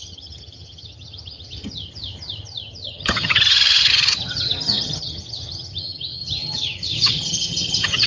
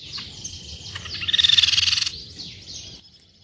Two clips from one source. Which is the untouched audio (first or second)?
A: second